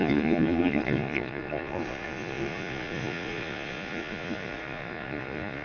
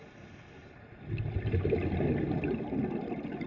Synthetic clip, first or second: first